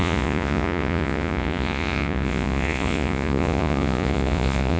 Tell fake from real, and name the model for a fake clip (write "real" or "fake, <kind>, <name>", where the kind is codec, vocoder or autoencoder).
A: fake, vocoder, Vocos